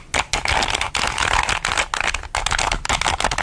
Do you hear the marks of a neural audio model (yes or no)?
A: no